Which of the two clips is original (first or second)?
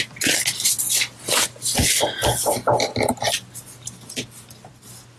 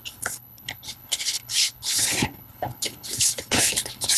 first